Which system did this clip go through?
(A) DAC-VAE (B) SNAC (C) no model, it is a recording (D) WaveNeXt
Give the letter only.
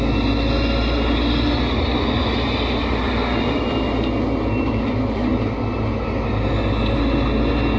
C